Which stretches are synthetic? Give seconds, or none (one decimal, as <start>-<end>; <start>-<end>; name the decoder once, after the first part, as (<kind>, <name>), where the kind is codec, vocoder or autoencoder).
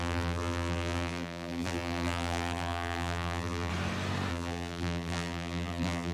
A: 0.0-3.7 (vocoder, BigVGAN v2); 4.3-6.1